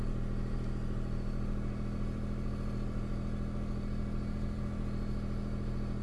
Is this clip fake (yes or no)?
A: no